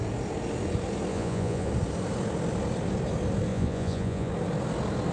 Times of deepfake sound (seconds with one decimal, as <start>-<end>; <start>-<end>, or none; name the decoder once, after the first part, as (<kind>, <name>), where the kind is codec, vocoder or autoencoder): 1.1-1.7 (vocoder, Vocos); 3.5-4.3